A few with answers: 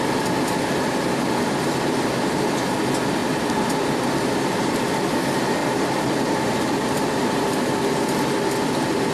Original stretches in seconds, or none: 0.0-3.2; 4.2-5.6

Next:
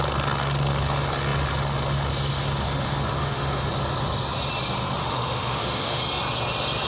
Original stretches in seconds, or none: 0.0-3.2; 3.7-5.0; 6.0-6.9

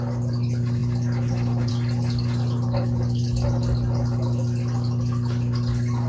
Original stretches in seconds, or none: 0.0-6.1

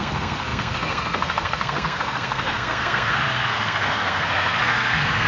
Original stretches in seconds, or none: none

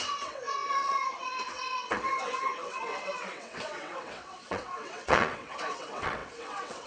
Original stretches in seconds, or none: none

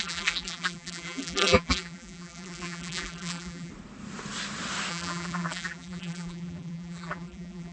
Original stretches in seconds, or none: 3.7-4.9